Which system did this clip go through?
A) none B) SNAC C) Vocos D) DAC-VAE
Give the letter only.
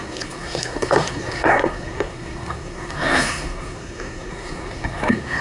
B